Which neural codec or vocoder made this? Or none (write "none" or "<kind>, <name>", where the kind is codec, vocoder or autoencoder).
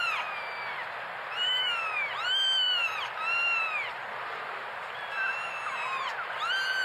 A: none